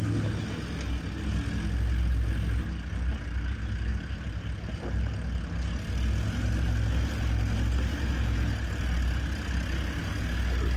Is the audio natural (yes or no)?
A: yes